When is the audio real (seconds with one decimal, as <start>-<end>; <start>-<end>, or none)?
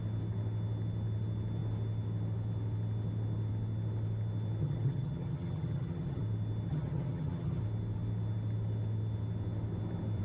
0.0-4.6; 6.2-6.7; 7.6-10.2